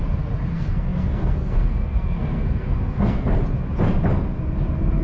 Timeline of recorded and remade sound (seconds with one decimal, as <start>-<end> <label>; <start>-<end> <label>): 0.0-0.5 recorded; 0.5-3.4 remade; 3.4-5.0 recorded